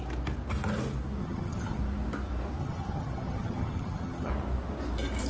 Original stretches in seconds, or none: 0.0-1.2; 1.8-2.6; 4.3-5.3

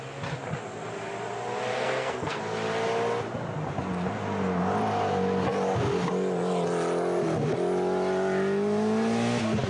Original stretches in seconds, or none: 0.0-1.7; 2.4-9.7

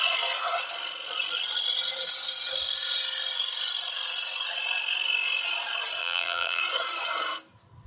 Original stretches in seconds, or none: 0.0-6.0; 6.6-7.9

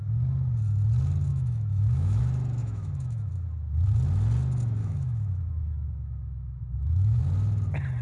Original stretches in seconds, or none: 0.0-1.3; 2.2-2.6; 3.3-4.8; 7.2-8.0

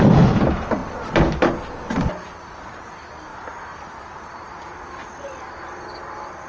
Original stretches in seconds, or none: 0.0-6.5